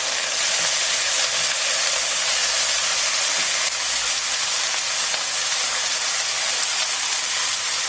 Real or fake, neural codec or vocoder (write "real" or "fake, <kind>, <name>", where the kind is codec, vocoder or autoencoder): real